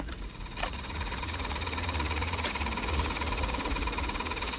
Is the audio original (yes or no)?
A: no